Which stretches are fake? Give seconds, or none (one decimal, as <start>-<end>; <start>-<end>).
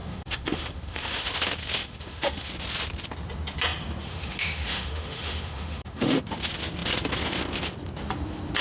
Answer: 0.0-1.3; 1.8-2.5; 4.1-6.2